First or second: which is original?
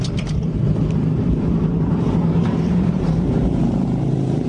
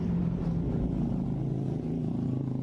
second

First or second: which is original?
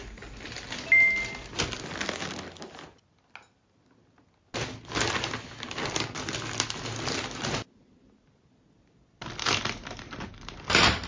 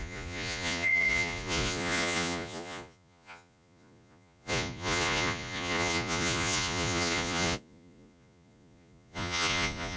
first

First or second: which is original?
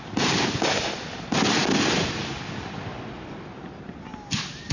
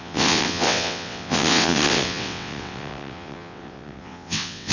first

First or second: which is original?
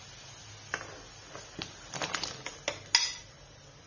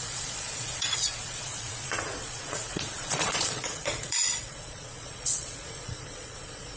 first